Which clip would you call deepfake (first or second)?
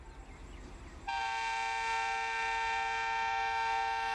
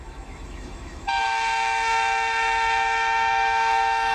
second